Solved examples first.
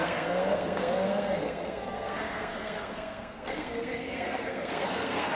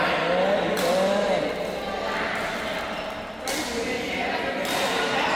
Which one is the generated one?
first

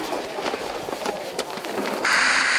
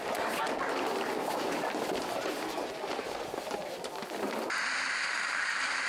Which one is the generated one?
first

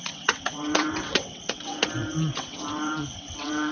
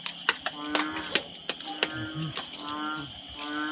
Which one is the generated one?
first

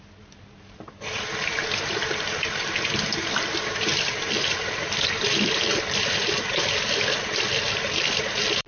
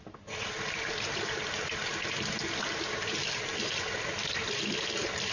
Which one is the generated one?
first